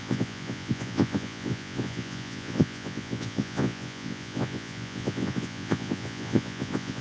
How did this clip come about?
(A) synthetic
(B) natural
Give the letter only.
A